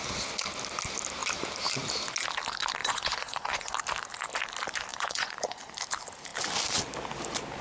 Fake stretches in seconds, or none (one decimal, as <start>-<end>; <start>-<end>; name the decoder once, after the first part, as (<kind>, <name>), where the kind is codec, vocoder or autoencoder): 2.8-3.7 (vocoder, Vocos); 4.9-5.7